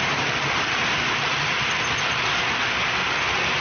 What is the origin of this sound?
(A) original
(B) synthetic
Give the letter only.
A